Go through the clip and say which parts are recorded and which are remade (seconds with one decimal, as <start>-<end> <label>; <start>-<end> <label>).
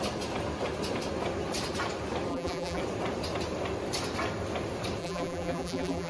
0.0-2.3 recorded; 2.3-2.8 remade; 2.8-5.0 recorded; 5.0-6.1 remade